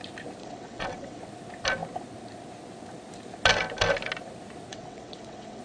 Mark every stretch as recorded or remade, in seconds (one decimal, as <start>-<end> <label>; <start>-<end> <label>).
0.0-0.4 recorded; 0.4-1.2 remade; 1.2-4.7 recorded; 4.7-5.6 remade